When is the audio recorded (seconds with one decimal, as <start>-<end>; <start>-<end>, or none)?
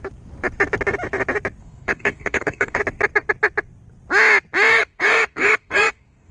0.0-1.6; 2.8-4.7